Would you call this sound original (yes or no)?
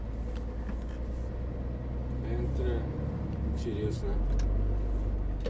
yes